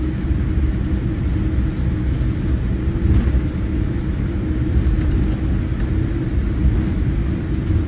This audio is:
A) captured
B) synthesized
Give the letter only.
A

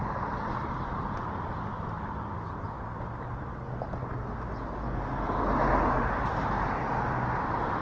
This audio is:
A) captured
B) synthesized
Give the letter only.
A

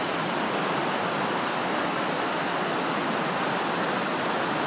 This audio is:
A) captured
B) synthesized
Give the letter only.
A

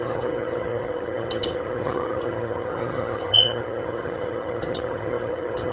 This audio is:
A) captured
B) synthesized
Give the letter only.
B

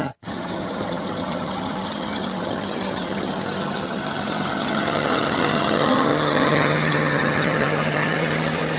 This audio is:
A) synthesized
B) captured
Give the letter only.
A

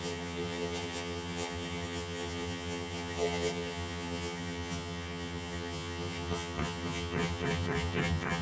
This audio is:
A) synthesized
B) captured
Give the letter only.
A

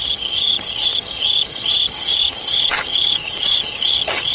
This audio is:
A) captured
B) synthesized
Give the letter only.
B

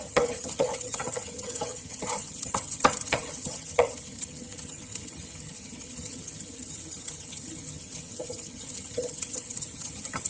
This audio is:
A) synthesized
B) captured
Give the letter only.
A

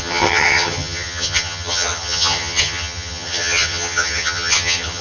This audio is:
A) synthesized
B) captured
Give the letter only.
A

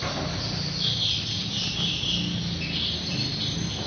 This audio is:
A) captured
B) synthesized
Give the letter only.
A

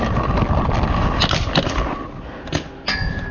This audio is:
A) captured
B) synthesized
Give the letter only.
A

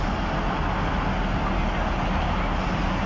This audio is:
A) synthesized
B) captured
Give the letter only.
B